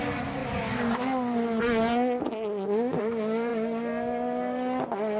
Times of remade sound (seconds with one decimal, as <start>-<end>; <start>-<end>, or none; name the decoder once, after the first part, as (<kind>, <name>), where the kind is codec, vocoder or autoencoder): none